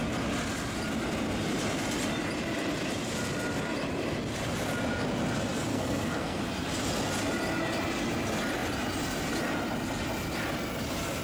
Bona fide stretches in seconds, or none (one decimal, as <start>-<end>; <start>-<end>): 0.0-5.7; 6.4-11.2

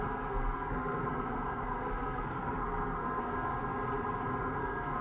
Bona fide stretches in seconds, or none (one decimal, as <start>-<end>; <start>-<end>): 3.5-4.6